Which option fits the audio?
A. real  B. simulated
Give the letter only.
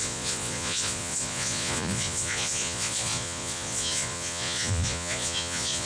B